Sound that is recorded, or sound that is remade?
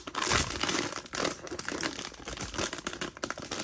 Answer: recorded